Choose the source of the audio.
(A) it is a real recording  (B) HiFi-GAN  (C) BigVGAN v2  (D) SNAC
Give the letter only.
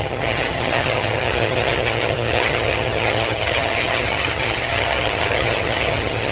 B